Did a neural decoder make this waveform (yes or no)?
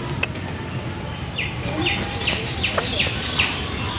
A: no